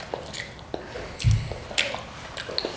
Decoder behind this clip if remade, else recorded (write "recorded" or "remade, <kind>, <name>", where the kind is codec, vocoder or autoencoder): recorded